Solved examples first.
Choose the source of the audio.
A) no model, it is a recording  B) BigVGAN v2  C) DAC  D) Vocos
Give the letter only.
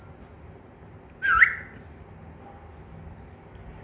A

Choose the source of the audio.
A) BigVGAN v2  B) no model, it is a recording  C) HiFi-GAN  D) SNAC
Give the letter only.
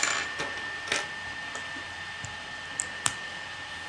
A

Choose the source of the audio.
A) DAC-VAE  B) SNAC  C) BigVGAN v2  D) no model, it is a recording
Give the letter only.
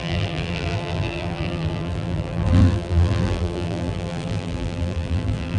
C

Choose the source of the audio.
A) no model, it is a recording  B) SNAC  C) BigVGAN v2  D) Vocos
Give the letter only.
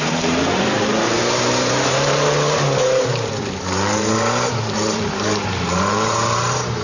C